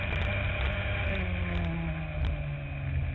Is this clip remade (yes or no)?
no